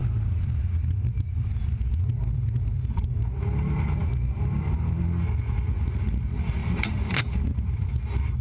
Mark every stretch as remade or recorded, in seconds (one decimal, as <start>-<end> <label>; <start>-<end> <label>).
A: 0.0-0.6 remade; 0.6-4.0 recorded; 4.0-5.0 remade; 5.0-6.6 recorded; 6.6-7.9 remade; 7.9-8.4 recorded